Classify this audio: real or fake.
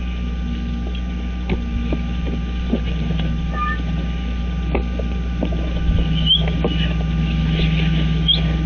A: real